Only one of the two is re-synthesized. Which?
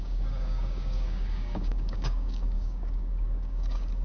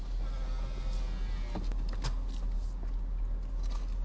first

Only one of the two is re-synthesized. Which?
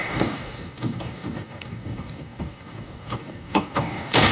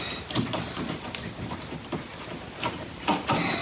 first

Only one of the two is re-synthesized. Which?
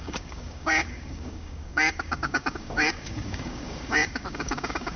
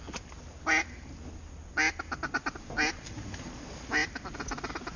first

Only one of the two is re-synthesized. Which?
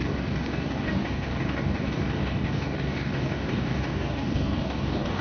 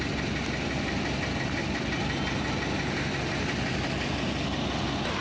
first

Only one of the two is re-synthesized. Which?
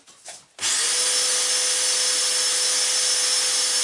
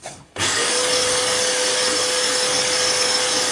second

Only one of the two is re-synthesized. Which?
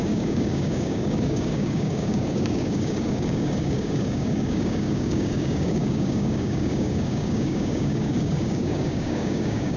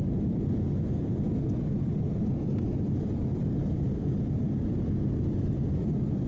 first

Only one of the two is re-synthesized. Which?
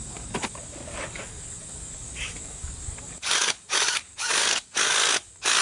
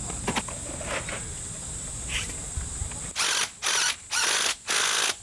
first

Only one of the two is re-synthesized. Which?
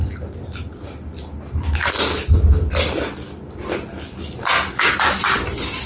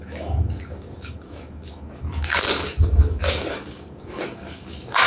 second